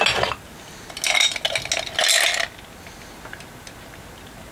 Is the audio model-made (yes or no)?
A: no